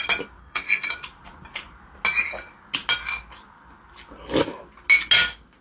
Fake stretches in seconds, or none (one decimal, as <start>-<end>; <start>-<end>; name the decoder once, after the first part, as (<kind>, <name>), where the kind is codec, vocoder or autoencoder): 0.4-0.9 (codec, SNAC)